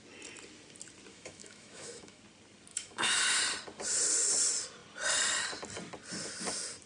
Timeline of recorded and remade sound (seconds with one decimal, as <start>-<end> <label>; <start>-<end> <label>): 0.0-1.1 recorded; 1.1-2.2 remade; 2.2-2.7 recorded; 2.7-3.4 remade; 3.4-6.9 recorded